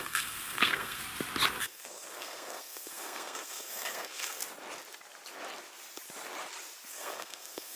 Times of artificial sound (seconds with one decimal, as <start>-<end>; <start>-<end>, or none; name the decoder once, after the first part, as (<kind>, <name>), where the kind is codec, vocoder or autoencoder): 0.0-1.0 (codec, SNAC); 1.6-4.4; 6.9-7.8